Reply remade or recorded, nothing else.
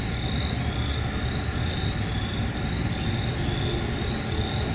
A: recorded